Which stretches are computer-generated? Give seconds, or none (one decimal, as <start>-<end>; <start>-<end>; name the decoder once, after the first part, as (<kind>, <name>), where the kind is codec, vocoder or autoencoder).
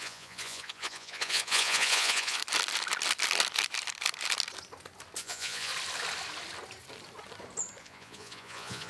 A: 0.0-2.4 (vocoder, Vocos); 5.2-5.7; 7.8-8.9